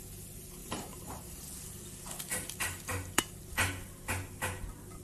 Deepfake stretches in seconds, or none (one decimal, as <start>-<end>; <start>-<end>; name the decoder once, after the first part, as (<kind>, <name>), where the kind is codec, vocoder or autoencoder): 0.6-1.4 (vocoder, BigVGAN v2); 2.3-3.4